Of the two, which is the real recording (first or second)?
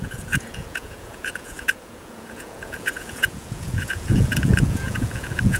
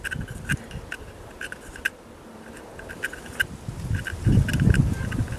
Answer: second